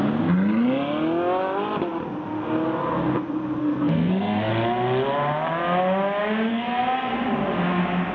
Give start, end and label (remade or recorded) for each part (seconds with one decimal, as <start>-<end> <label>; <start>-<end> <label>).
0.0-3.6 recorded; 3.6-4.5 remade; 4.5-6.5 recorded; 6.5-7.1 remade; 7.1-8.1 recorded